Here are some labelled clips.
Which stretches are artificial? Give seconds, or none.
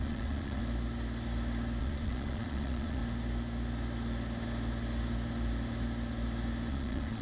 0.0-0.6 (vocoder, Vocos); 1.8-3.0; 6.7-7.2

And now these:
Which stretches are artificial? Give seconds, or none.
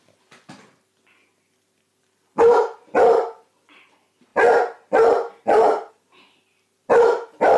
none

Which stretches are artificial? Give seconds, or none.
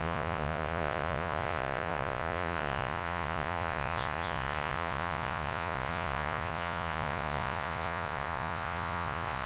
0.0-9.5 (vocoder, Vocos)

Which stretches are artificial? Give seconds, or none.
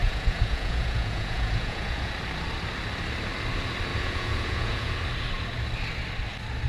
0.0-2.1 (vocoder, Vocos); 3.9-4.9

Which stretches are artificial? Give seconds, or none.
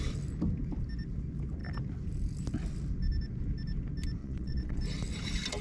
4.2-4.8 (vocoder, Vocos)